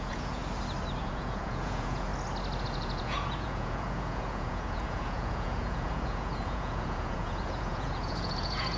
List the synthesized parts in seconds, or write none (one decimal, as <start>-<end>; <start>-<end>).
0.0-0.4; 1.0-2.1; 2.6-8.8

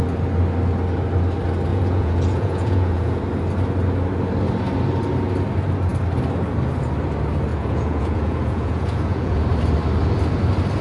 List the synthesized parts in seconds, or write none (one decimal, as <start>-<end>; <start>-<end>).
1.7-3.2; 7.5-9.4